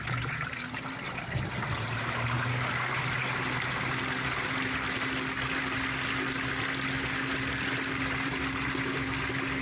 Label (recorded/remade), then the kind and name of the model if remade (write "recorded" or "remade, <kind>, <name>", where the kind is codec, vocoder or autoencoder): recorded